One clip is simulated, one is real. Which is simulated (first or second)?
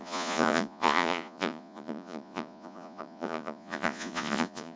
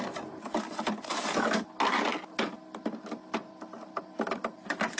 first